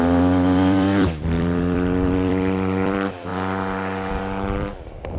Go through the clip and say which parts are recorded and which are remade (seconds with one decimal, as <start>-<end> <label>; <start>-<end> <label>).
0.0-3.3 remade; 3.3-4.1 recorded; 4.1-5.2 remade